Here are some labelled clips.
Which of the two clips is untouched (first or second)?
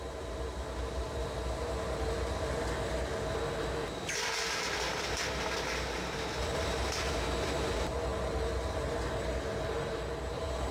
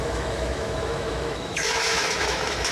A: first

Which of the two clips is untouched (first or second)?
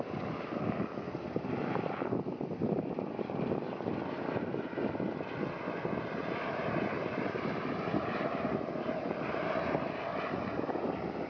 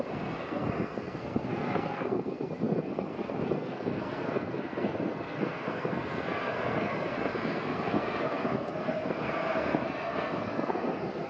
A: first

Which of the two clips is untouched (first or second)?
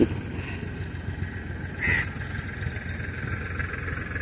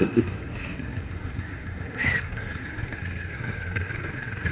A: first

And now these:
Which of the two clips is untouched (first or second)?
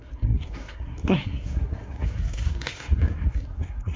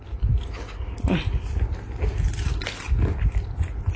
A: second